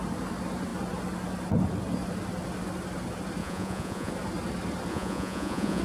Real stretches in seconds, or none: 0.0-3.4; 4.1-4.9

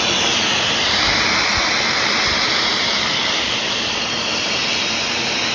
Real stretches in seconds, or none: 0.0-3.0; 4.0-5.5

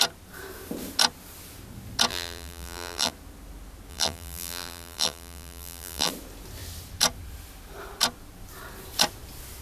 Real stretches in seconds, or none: 0.0-2.1; 3.1-3.9; 6.1-9.6

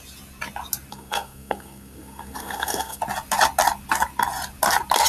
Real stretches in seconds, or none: 0.0-0.9; 3.0-5.1

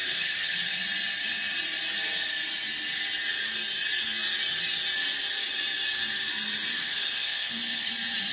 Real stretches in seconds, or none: 0.8-6.7; 7.9-8.3

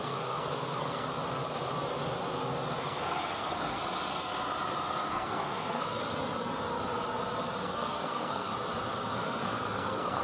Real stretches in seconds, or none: 1.1-2.8; 3.8-5.1; 6.0-7.6; 8.5-9.1

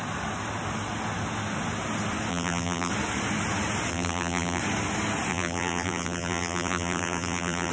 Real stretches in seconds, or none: 0.0-2.3; 2.9-3.9; 4.6-5.3

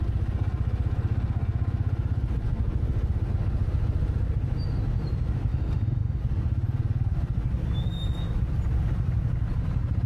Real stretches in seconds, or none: 0.0-5.5; 6.2-10.1